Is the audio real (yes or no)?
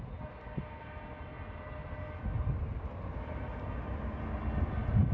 yes